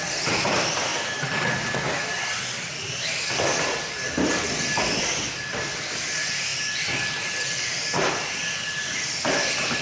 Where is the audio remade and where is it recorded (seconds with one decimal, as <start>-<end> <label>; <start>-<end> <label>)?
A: 0.0-9.8 recorded

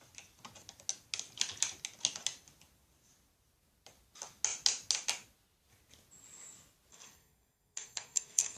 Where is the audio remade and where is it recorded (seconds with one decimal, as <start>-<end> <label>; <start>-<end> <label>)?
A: 0.0-6.9 recorded; 6.9-8.6 remade

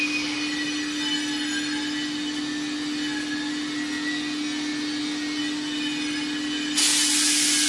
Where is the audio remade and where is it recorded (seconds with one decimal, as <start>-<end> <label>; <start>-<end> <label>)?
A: 0.0-7.7 recorded

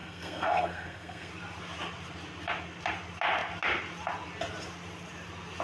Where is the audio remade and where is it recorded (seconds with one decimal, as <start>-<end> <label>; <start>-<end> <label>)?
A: 0.0-1.3 remade; 1.3-5.6 recorded

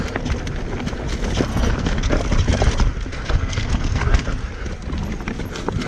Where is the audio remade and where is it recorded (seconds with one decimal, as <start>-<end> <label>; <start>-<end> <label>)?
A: 0.0-1.5 recorded; 1.5-2.1 remade; 2.1-3.1 recorded; 3.1-4.3 remade; 4.3-5.9 recorded